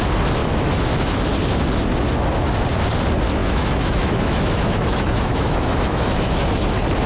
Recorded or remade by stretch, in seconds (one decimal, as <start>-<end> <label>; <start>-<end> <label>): 0.0-0.4 recorded; 0.4-1.2 remade; 1.2-3.4 recorded; 3.4-6.3 remade; 6.3-7.1 recorded